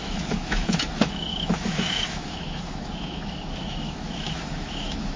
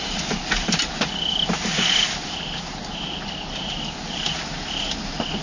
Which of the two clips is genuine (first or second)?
second